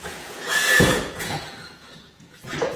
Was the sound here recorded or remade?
remade